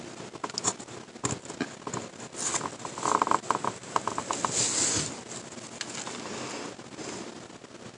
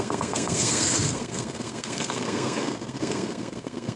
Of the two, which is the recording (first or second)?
first